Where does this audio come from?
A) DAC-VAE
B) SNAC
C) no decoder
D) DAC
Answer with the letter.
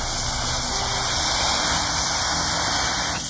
C